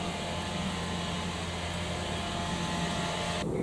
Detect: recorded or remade recorded